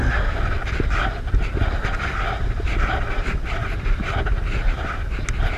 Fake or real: real